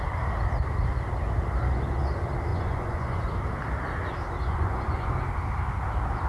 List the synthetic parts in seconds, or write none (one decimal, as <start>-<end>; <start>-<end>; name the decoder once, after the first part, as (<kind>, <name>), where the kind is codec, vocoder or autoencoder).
2.5-3.2 (vocoder, Vocos); 4.4-5.1